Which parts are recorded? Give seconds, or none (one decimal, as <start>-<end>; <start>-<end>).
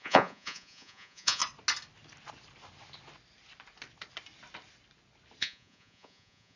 1.4-5.4